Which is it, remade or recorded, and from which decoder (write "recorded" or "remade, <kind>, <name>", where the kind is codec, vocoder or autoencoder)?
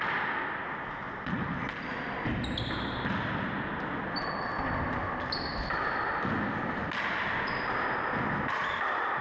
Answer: recorded